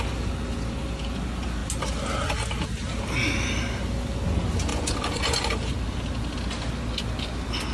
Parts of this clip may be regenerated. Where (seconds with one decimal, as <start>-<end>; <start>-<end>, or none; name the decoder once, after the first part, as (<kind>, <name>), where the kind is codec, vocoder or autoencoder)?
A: 4.7-5.5 (vocoder, Vocos)